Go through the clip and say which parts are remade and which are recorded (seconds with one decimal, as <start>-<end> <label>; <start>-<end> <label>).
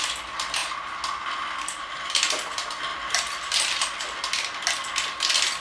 0.0-2.9 recorded; 2.9-3.8 remade; 3.8-5.6 recorded